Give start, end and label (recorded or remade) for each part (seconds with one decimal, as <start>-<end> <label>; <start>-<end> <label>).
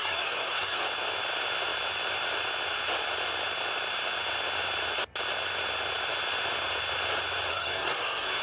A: 0.0-0.8 remade; 0.8-7.5 recorded; 7.5-8.4 remade